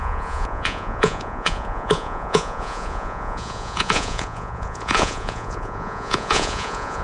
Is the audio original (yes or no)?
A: no